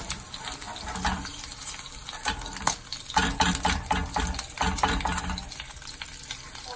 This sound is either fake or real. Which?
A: real